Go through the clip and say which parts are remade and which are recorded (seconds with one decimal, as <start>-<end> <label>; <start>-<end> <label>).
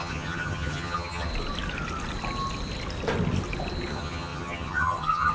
0.0-1.3 remade; 1.3-3.9 recorded; 3.9-5.3 remade